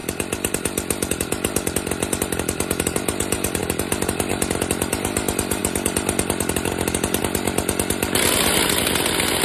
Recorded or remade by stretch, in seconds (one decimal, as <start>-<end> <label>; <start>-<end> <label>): 0.0-0.5 recorded; 0.5-3.6 remade; 3.6-4.3 recorded; 4.3-9.4 remade